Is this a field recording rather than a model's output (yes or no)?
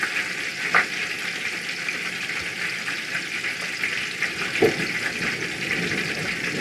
yes